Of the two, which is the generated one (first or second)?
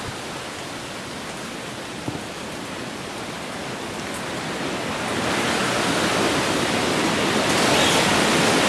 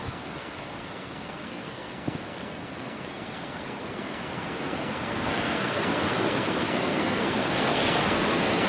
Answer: second